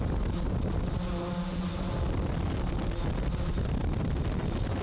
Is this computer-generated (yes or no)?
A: no